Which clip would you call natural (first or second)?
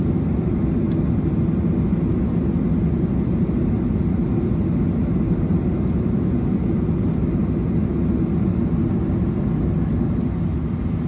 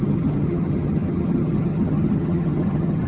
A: first